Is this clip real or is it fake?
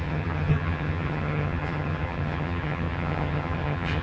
fake